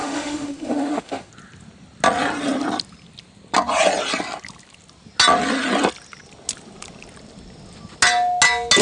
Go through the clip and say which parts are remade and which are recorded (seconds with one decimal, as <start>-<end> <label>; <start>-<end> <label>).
0.0-1.3 remade; 1.3-8.8 recorded